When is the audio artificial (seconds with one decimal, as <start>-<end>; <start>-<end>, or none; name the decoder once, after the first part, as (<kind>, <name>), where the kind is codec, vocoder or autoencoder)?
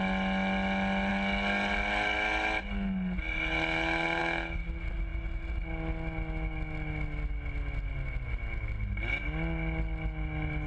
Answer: none